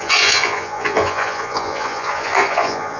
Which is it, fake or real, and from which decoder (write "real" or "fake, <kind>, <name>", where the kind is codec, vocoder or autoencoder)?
fake, vocoder, Vocos